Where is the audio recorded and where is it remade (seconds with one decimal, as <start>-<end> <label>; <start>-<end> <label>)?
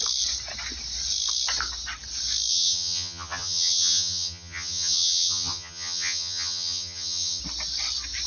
0.0-2.5 recorded; 2.5-7.4 remade; 7.4-8.3 recorded